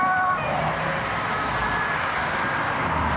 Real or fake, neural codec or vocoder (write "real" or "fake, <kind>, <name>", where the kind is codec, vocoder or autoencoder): real